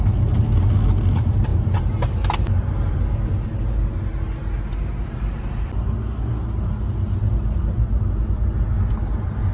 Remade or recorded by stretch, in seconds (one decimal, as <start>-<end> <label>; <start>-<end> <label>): 0.0-9.5 recorded